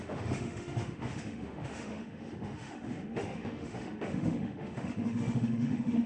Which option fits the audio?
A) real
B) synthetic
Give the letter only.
B